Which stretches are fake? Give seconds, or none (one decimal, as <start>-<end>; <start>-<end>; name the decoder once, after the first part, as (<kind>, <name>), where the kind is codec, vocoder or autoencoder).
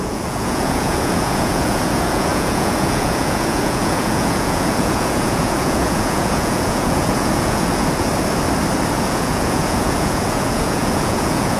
0.0-8.1 (vocoder, Vocos); 8.9-11.6